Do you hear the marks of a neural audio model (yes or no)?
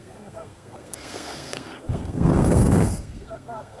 yes